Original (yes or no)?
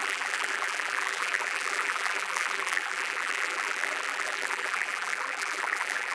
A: no